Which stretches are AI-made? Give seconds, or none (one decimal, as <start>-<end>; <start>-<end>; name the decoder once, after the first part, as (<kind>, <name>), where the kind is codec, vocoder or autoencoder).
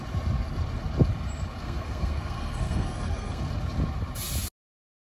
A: 1.6-3.4 (codec, SNAC)